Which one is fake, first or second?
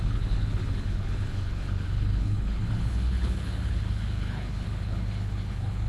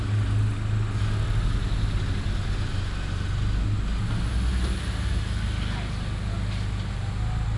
first